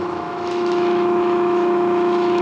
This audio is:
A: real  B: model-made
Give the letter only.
B